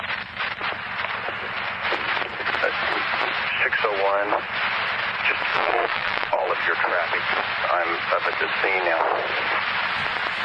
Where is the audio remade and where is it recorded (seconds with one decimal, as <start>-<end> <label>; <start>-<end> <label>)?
0.0-5.5 recorded; 5.5-6.5 remade; 6.5-10.4 recorded